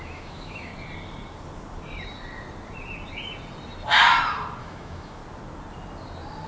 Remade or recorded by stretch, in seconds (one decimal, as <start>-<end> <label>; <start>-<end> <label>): 0.0-0.7 remade; 0.7-4.6 recorded; 4.6-5.2 remade; 5.2-6.5 recorded